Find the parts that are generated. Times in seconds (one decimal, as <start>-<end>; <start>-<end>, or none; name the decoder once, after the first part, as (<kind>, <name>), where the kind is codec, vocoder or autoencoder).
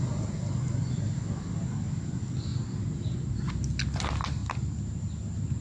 none